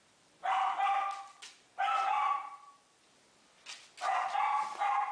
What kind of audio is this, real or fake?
real